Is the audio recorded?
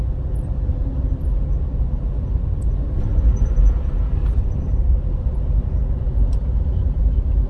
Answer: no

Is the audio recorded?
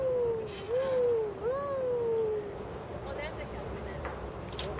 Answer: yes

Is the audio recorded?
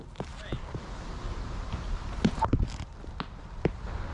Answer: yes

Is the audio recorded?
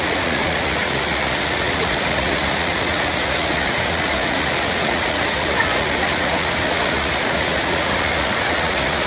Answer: no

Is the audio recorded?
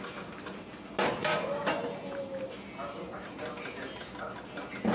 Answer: yes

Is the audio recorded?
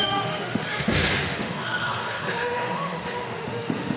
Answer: no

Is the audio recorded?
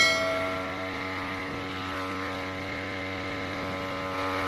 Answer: yes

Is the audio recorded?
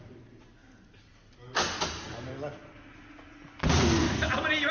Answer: yes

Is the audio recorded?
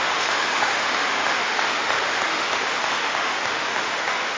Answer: no